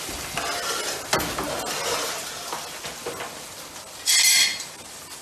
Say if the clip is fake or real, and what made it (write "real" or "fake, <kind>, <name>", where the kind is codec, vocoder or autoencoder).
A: real